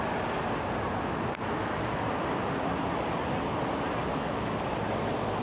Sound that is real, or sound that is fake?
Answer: real